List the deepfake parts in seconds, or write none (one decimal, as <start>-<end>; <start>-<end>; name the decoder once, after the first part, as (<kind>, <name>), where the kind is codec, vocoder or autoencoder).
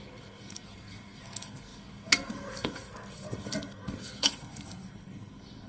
0.0-5.7 (codec, SNAC)